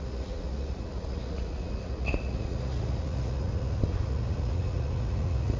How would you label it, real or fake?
fake